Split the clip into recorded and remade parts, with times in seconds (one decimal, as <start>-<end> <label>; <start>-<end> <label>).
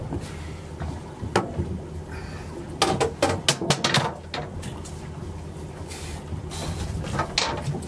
0.0-7.9 recorded